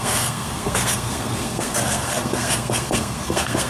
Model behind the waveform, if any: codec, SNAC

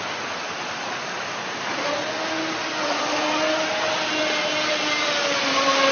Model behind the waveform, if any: none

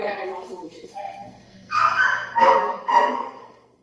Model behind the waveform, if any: codec, SNAC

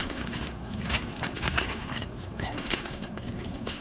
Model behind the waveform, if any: codec, SNAC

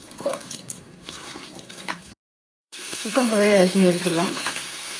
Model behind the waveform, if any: codec, SNAC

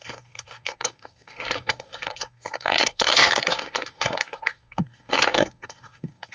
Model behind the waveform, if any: codec, SNAC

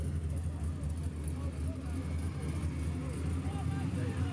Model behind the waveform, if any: none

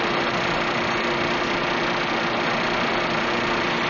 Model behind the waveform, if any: none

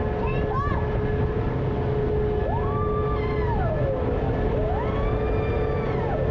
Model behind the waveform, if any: none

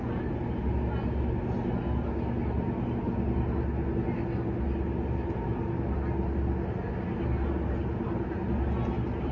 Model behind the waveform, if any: none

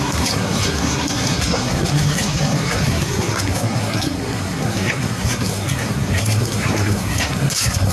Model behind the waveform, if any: codec, SNAC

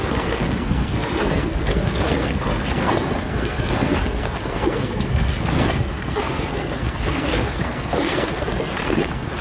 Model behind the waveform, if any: codec, SNAC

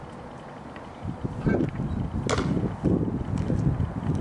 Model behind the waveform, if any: none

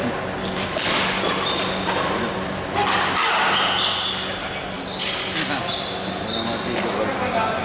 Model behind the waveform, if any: none